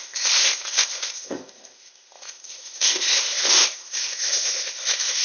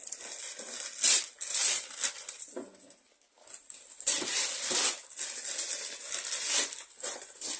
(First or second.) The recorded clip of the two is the second